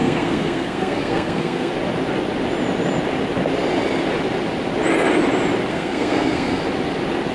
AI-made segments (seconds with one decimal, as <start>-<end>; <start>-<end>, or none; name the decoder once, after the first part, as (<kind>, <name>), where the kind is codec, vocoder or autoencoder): 0.0-1.7 (codec, SNAC); 5.7-6.6